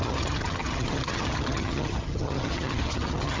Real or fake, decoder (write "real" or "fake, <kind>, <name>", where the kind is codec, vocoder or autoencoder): fake, vocoder, HiFi-GAN